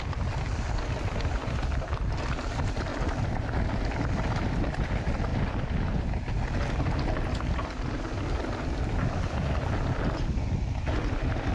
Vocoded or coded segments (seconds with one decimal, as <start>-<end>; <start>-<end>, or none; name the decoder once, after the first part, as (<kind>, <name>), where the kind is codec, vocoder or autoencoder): none